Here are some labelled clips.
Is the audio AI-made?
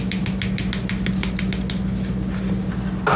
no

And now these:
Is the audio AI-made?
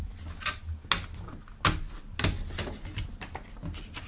no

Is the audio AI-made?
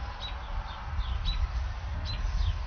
no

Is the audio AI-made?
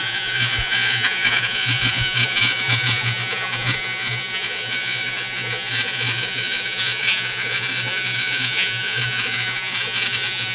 yes